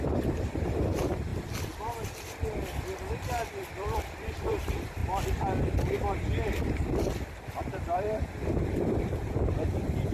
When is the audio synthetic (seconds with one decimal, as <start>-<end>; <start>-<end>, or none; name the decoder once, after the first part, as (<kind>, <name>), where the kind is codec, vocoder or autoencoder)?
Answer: 0.0-1.3 (vocoder, BigVGAN v2); 3.1-5.0; 7.6-10.1